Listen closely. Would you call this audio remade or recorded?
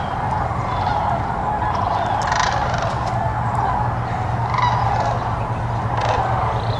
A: recorded